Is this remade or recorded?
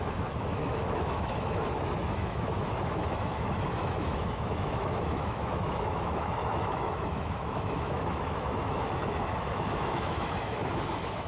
remade